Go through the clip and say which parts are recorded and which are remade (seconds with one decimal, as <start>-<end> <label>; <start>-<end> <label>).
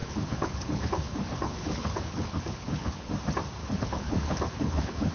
0.0-3.1 remade; 3.1-3.6 recorded; 3.6-5.1 remade